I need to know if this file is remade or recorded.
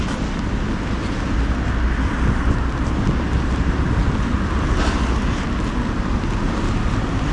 recorded